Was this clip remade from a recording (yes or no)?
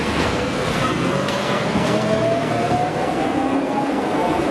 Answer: yes